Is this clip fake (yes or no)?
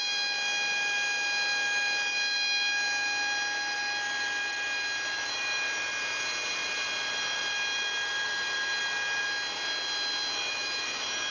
no